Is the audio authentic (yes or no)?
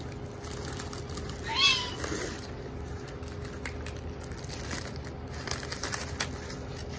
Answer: yes